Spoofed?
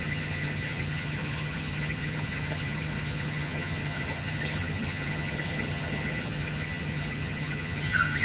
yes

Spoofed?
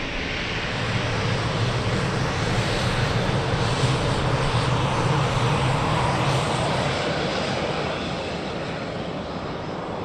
no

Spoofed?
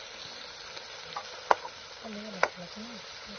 no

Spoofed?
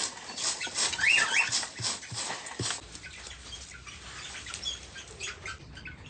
no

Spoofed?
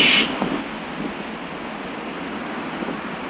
no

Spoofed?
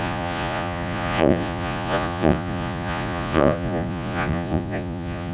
yes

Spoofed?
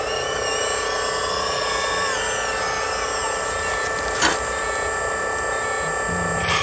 no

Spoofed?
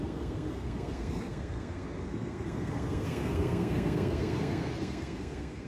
yes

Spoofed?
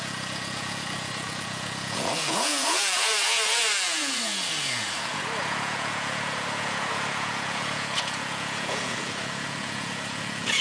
yes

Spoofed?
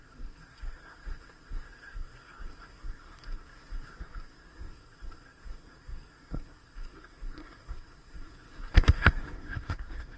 yes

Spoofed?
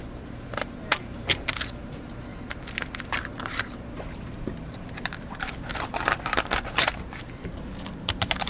yes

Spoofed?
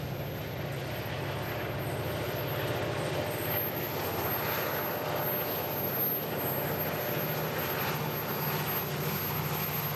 no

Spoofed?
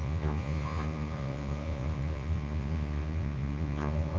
yes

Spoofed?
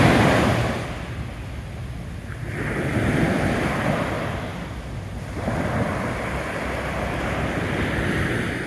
no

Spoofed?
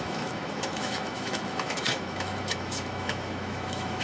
yes